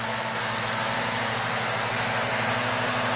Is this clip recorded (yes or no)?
yes